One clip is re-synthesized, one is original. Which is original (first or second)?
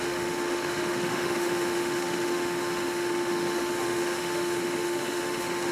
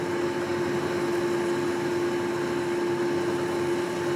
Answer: second